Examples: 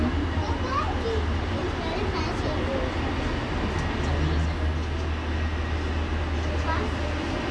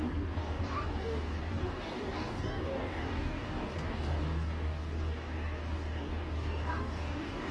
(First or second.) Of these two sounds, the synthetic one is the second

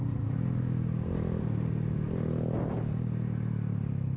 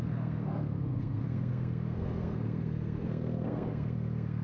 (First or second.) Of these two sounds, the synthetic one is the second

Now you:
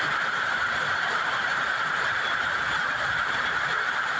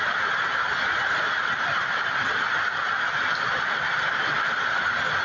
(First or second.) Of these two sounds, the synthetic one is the first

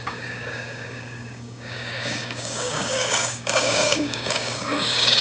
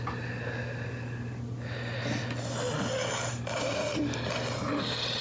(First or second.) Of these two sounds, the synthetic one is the first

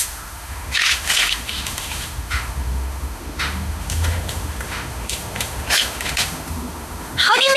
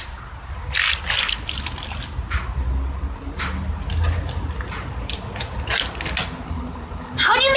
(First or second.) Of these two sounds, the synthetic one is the first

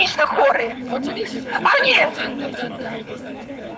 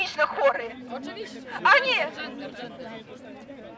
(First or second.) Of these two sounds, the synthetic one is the first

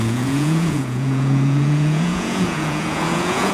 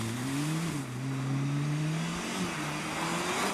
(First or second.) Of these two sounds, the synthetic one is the first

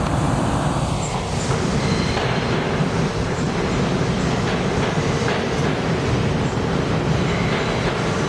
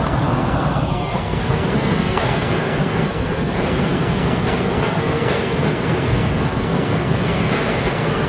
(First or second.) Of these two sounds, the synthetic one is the second